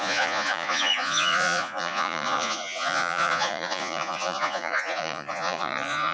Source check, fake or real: fake